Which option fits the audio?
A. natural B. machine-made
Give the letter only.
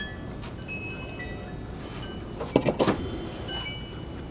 A